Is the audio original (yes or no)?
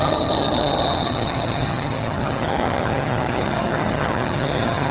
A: no